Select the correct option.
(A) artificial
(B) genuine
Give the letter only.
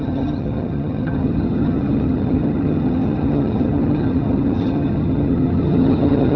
A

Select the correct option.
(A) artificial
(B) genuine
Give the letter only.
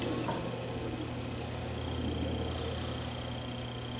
B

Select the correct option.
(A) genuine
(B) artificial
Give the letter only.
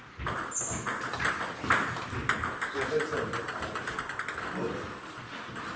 A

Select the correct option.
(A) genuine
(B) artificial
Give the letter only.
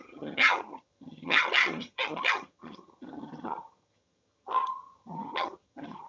B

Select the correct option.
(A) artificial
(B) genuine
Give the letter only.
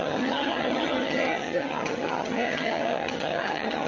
A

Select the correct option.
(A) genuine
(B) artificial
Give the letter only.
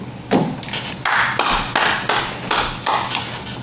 A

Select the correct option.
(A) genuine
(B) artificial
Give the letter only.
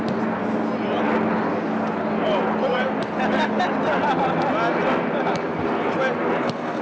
A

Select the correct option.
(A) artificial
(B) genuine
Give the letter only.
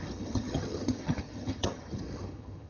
A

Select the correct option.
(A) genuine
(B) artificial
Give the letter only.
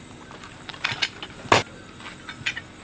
A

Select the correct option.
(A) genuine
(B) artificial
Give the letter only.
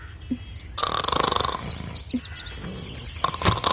A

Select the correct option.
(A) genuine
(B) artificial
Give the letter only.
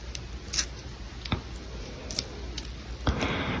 A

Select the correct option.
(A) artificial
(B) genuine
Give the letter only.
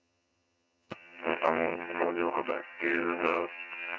A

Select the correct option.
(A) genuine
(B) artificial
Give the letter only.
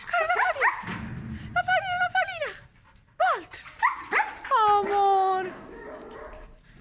A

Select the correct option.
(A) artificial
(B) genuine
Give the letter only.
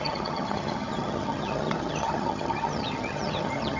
A